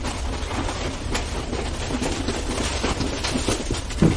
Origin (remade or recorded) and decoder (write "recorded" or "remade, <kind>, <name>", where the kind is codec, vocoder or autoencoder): recorded